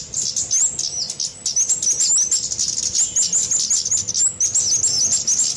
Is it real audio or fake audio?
real